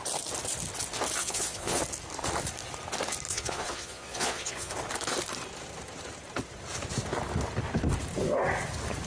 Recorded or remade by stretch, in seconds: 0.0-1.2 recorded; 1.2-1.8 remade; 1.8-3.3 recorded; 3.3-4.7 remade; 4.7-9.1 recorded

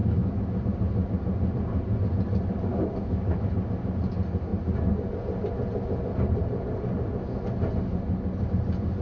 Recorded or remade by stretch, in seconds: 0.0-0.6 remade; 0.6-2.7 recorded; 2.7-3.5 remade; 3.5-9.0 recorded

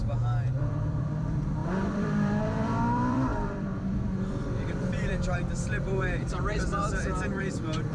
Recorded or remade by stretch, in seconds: 0.0-7.9 remade

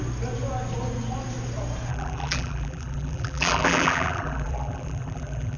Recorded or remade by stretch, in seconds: 0.0-1.9 recorded; 1.9-5.6 remade